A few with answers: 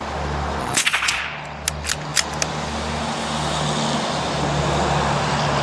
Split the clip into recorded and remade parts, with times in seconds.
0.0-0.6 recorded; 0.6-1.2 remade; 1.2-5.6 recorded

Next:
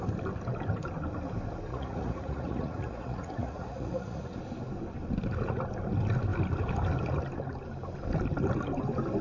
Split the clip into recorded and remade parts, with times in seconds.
0.0-1.7 recorded; 1.7-4.4 remade; 4.4-9.2 recorded

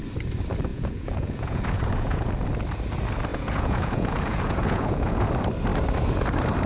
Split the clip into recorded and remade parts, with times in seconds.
0.0-0.7 recorded; 0.7-2.3 remade; 2.3-3.3 recorded; 3.3-5.3 remade; 5.3-6.7 recorded

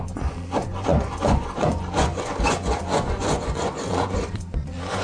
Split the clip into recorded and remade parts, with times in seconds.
0.0-5.0 remade